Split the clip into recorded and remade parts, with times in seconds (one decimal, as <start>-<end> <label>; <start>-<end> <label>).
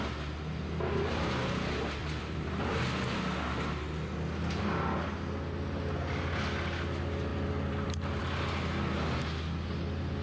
0.0-2.0 recorded; 2.0-2.8 remade; 2.8-7.3 recorded; 7.3-8.2 remade; 8.2-10.2 recorded